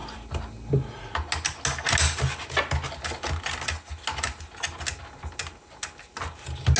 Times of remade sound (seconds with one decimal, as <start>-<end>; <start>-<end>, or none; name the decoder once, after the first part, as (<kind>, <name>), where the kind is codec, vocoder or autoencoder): none